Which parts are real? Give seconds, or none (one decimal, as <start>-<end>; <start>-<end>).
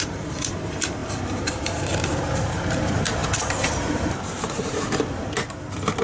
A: 5.2-6.0